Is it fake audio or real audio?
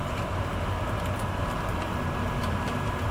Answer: real